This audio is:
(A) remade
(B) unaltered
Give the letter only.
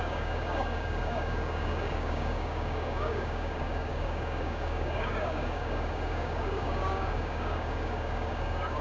A